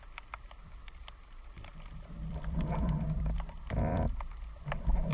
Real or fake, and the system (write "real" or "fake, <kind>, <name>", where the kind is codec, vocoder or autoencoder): fake, vocoder, BigVGAN v2